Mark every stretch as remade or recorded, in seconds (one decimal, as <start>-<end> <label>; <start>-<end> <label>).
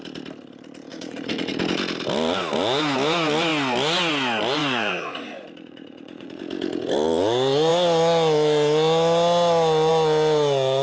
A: 0.0-0.9 recorded; 0.9-1.5 remade; 1.5-4.6 recorded; 4.6-6.4 remade; 6.4-10.8 recorded